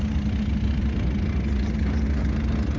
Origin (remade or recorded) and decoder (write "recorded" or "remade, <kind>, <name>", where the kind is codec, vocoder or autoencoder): recorded